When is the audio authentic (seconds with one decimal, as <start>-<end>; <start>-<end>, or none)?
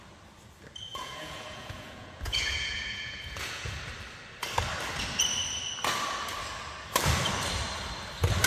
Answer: 0.0-0.9; 3.8-8.5